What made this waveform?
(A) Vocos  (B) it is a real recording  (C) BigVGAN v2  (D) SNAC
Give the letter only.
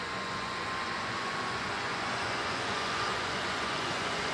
A